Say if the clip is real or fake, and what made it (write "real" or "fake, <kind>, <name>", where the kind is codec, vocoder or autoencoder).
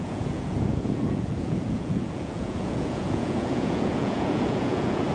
fake, vocoder, Vocos